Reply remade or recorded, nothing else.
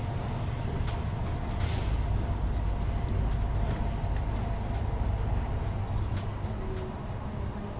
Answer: recorded